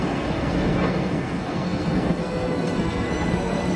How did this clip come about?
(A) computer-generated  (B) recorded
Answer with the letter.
A